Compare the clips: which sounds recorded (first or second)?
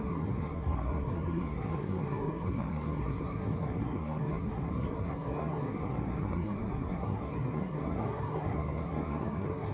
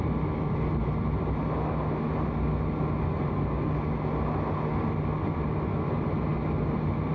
second